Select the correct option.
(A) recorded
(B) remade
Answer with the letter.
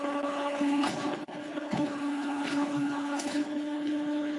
B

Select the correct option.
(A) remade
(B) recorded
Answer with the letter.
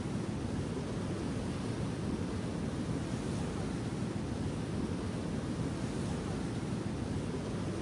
B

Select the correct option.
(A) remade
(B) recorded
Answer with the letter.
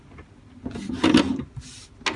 B